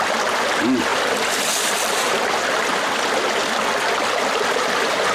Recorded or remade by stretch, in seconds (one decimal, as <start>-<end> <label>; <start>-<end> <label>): 0.0-5.1 recorded